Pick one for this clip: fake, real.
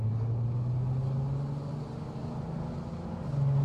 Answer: real